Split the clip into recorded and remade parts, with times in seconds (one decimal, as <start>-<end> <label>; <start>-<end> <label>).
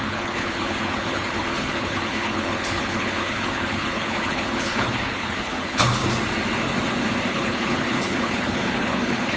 0.0-6.0 remade; 6.0-7.3 recorded; 7.3-9.4 remade